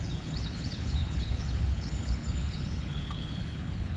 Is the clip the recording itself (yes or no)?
no